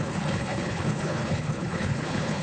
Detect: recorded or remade remade